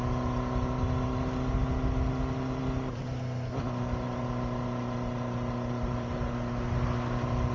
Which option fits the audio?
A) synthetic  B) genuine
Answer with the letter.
B